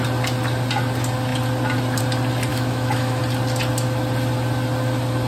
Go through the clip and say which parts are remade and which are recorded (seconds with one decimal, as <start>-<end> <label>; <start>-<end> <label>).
0.0-2.5 recorded; 2.5-3.2 remade; 3.2-5.3 recorded